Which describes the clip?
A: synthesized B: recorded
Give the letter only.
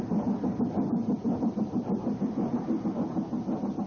B